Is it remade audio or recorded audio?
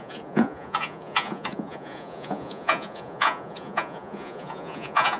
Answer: remade